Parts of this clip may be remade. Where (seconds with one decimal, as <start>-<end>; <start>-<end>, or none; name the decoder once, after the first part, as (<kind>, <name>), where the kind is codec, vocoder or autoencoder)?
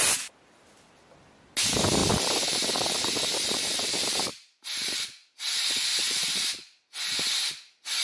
2.0-5.0 (vocoder, BigVGAN v2); 5.9-6.5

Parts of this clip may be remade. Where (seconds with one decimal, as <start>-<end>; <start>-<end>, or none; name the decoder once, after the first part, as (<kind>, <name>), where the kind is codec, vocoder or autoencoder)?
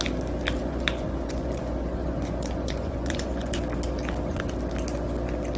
0.6-3.5 (vocoder, Vocos)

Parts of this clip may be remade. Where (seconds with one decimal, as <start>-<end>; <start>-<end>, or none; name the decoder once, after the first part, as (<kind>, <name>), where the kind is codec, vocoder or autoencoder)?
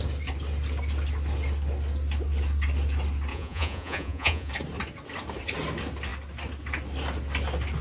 3.3-4.5 (vocoder, Vocos)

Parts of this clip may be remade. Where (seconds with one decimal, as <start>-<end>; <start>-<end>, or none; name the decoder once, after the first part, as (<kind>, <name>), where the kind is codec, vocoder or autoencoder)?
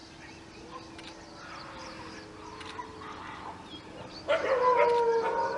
none